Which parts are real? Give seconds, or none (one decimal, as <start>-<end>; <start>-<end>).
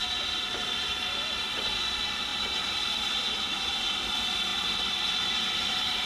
0.0-6.1